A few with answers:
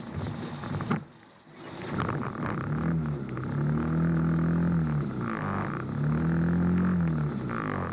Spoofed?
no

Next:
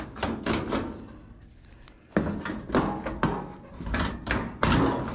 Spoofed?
no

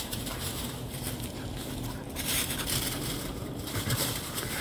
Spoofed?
yes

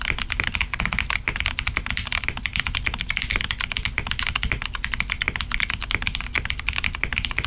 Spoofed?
no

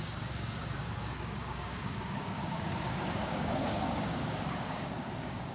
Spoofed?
yes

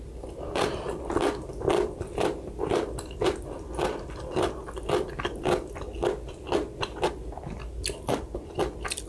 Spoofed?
no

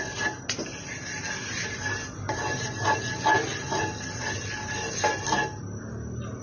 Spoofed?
no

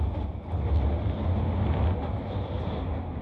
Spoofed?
no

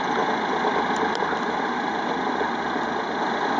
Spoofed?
no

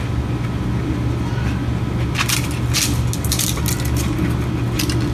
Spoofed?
no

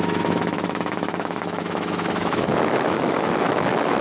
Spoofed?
yes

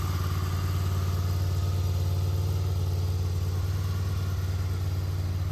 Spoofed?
no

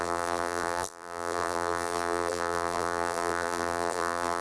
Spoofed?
yes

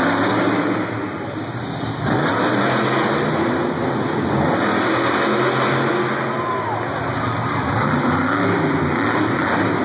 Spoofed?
no